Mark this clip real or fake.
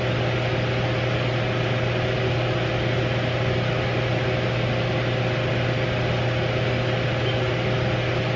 real